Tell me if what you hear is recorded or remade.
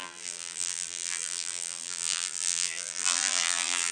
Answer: remade